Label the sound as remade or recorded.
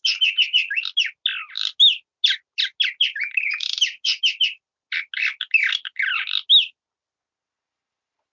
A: recorded